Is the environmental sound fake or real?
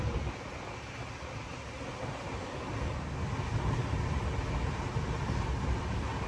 real